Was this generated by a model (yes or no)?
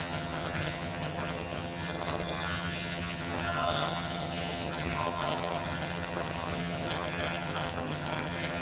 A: yes